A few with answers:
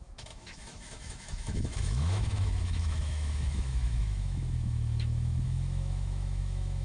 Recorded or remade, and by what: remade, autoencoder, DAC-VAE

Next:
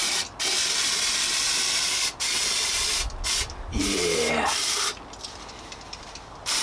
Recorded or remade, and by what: remade, vocoder, BigVGAN v2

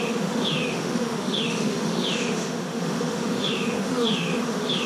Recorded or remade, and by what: remade, autoencoder, DAC-VAE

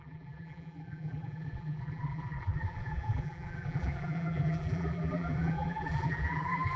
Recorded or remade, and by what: remade, vocoder, BigVGAN v2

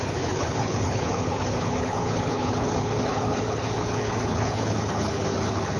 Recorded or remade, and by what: remade, codec, HILCodec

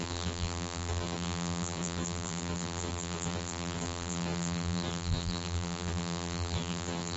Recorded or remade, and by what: remade, vocoder, BigVGAN v2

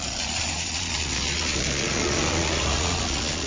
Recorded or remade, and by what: remade, vocoder, Vocos